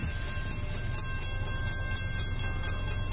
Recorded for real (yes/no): yes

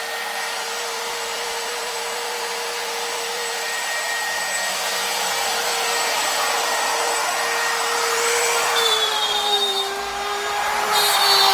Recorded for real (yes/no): no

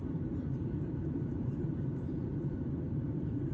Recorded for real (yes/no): no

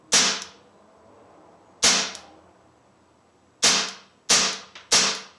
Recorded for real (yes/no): yes